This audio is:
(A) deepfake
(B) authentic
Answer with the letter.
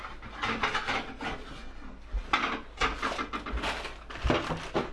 B